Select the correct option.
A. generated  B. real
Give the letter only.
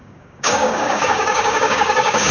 A